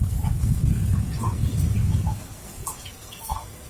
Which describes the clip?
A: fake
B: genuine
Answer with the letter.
A